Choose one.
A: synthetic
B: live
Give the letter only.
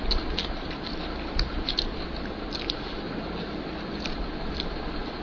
B